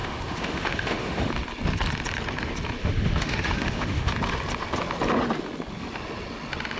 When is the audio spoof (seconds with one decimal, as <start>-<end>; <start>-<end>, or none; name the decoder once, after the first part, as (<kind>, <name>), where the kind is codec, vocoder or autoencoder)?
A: 0.0-1.3 (autoencoder, DAC-VAE); 2.8-4.1